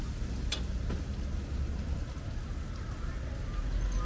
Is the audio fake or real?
real